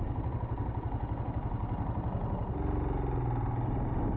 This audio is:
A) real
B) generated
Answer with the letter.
A